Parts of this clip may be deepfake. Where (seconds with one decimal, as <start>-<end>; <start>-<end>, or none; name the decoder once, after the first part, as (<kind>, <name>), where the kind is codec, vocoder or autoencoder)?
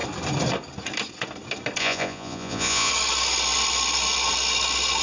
1.8-2.9 (vocoder, Vocos)